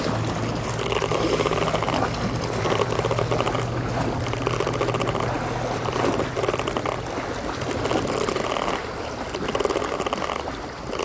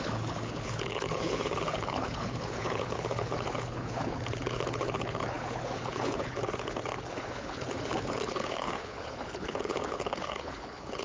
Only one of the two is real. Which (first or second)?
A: first